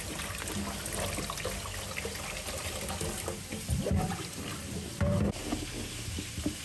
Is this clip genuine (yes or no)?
yes